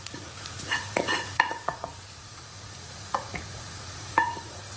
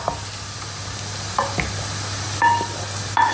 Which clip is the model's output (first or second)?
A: first